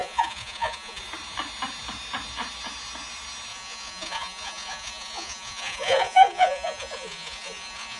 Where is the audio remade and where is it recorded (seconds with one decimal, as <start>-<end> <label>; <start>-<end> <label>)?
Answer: 0.0-1.0 remade; 1.0-3.5 recorded; 3.5-8.0 remade